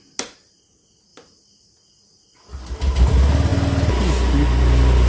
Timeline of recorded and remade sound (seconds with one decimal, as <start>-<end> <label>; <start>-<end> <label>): 0.0-5.1 recorded